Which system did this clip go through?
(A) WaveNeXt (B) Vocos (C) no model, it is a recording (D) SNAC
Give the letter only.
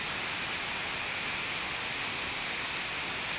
C